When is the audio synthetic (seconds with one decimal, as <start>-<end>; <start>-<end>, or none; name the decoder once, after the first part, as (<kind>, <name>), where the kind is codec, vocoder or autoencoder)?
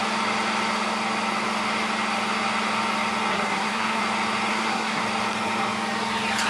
3.3-4.0 (codec, SNAC); 4.5-5.0